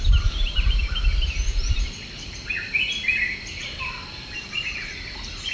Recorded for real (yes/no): no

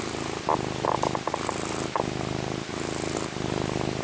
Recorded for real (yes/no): yes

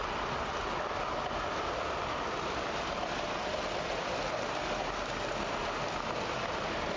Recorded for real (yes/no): yes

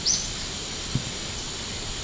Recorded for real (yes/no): yes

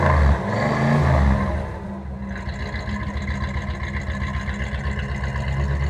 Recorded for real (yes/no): yes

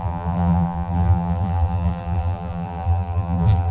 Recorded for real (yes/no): no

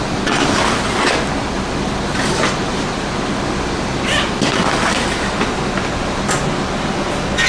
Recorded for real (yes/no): yes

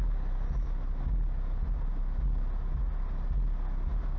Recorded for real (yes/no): yes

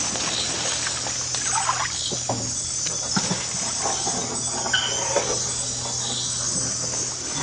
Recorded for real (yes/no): yes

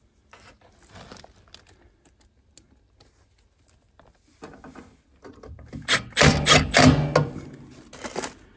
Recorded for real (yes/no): yes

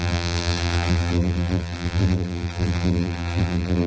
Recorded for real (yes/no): no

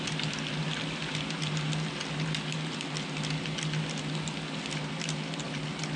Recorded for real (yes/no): yes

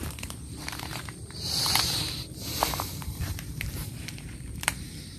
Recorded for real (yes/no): no